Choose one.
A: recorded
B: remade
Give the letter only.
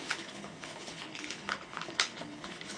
B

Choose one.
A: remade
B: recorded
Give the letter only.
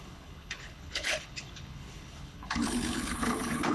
A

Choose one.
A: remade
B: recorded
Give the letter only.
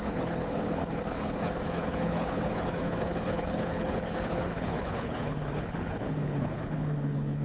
A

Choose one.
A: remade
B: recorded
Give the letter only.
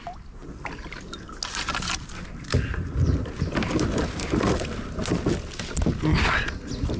B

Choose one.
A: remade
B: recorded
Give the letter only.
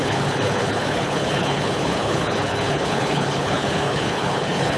A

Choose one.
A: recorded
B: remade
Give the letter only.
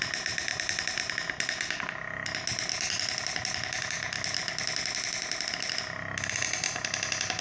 A